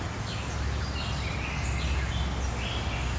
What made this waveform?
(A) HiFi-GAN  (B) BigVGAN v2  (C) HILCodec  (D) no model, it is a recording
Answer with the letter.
D